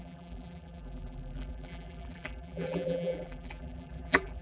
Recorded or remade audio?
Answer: remade